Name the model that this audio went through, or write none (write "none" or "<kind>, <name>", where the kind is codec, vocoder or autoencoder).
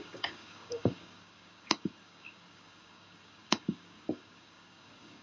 codec, DAC